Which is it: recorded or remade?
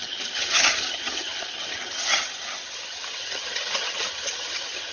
remade